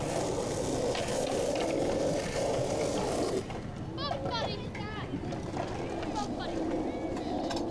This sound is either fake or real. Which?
real